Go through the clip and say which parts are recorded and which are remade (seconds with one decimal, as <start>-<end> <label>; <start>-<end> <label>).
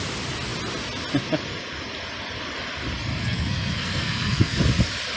0.0-3.2 recorded; 3.2-4.6 remade; 4.6-5.2 recorded